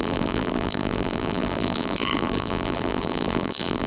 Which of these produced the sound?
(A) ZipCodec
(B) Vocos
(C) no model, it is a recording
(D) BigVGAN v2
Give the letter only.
D